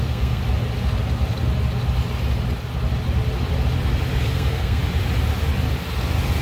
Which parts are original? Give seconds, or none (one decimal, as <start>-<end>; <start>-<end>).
0.4-4.2; 4.8-6.4